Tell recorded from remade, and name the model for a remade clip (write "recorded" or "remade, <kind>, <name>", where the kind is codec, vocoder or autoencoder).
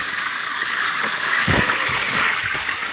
remade, codec, DAC